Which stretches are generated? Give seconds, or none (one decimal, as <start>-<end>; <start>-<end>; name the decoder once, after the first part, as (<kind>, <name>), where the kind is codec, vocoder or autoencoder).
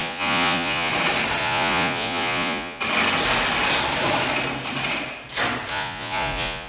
0.0-0.9 (vocoder, Vocos); 1.4-2.8; 5.7-6.7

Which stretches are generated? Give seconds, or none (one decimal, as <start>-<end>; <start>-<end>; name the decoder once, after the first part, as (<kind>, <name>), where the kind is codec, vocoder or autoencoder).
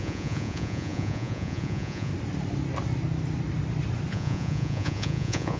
0.0-2.1 (vocoder, Vocos); 4.1-5.6